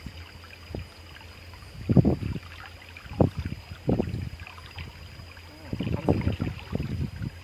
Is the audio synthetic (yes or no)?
no